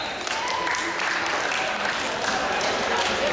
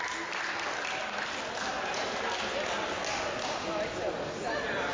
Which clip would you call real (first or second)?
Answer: second